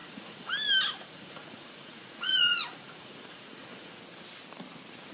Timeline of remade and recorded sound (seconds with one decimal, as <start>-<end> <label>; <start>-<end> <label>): 0.0-0.5 remade; 0.5-1.0 recorded; 1.0-4.0 remade; 4.0-5.1 recorded